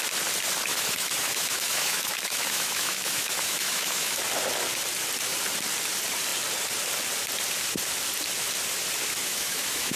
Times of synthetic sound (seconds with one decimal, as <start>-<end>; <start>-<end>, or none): 0.7-4.2; 9.2-10.0